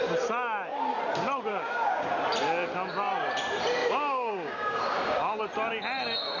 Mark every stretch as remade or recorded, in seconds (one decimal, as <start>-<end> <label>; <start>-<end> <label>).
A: 0.0-1.5 recorded; 1.5-2.1 remade; 2.1-3.8 recorded; 3.8-5.4 remade; 5.4-6.4 recorded